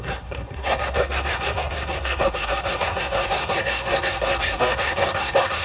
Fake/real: fake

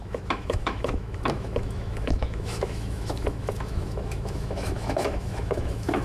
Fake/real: fake